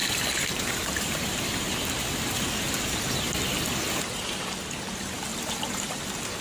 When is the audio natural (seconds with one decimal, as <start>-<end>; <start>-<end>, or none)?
3.1-5.3; 6.0-6.4